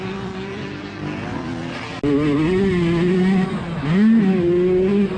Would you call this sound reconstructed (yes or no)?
no